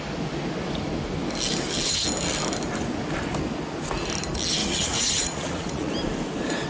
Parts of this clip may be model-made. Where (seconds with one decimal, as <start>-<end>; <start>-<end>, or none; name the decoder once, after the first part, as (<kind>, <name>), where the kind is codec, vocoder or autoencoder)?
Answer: 4.6-5.9 (vocoder, Vocos)